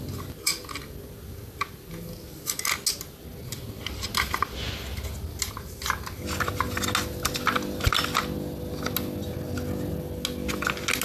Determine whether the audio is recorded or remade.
recorded